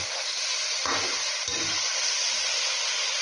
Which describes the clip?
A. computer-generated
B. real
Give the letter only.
B